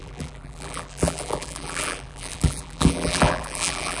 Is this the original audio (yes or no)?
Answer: no